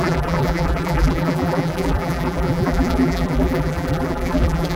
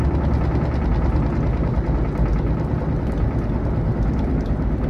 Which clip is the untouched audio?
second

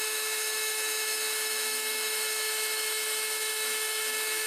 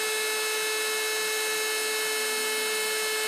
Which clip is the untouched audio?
second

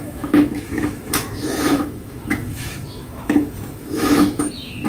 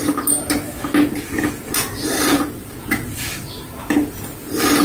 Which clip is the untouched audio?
second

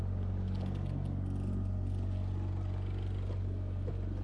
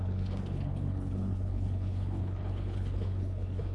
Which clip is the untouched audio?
first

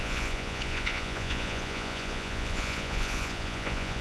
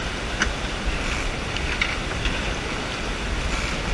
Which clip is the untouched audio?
second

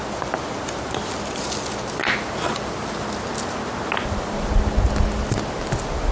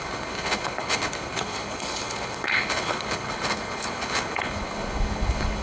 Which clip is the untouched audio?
first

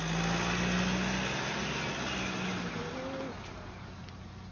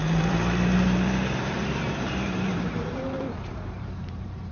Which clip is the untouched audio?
first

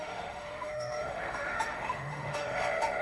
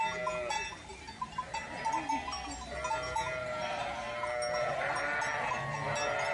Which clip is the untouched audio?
second